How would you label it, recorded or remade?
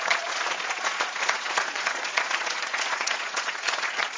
remade